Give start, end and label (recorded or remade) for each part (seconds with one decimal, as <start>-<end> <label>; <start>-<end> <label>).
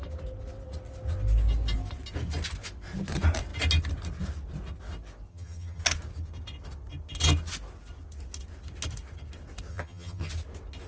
0.0-5.3 recorded; 5.3-5.8 remade; 5.8-9.7 recorded; 9.7-10.3 remade; 10.3-10.9 recorded